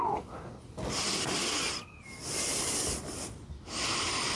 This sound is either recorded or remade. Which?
recorded